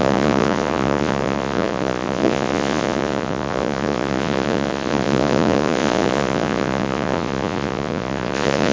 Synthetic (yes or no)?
yes